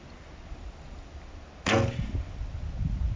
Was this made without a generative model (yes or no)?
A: yes